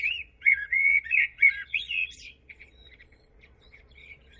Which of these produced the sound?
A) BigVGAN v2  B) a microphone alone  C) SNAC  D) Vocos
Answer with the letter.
D